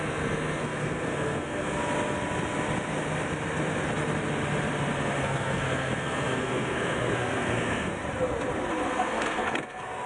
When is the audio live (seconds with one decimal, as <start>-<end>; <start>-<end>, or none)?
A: 1.8-5.2; 8.0-8.9